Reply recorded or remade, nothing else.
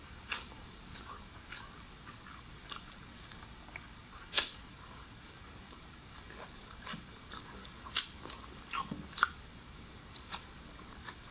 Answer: remade